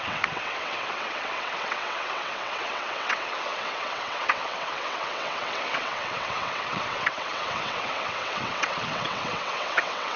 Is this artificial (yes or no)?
yes